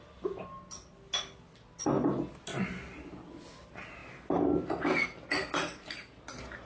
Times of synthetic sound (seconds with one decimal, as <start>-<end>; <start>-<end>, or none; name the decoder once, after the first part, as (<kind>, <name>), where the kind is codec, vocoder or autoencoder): none